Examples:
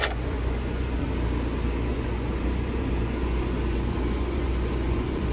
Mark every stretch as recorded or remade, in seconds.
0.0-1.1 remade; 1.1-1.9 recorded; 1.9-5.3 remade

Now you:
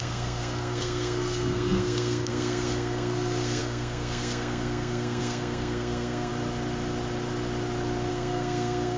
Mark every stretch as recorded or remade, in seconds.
0.0-6.3 remade; 6.3-8.1 recorded; 8.1-9.0 remade

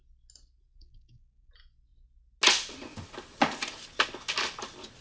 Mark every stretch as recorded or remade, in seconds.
0.0-0.8 recorded; 0.8-1.5 remade; 1.5-5.0 recorded

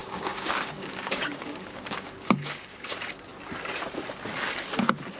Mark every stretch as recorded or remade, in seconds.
0.0-3.3 remade; 3.3-5.2 recorded

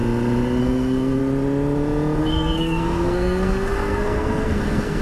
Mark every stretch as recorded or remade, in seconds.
0.0-0.6 recorded; 0.6-1.2 remade; 1.2-2.2 recorded; 2.2-5.0 remade

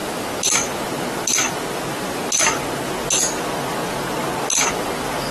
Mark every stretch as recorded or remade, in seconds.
0.0-5.3 recorded

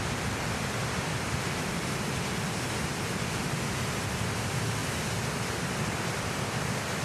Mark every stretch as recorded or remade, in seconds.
0.0-7.0 recorded